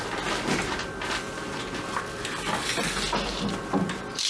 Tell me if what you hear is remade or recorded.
recorded